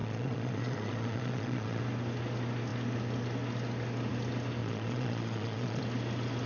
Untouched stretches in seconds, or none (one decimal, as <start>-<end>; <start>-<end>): 1.8-4.6; 5.8-6.5